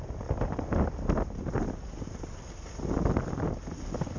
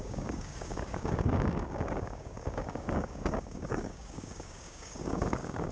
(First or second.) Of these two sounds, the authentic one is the first